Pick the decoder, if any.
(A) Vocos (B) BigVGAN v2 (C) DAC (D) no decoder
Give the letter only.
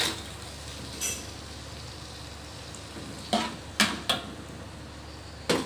D